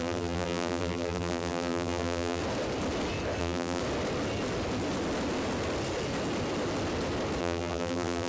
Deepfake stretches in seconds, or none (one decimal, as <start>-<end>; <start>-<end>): 0.0-2.4; 3.4-3.8; 7.4-8.3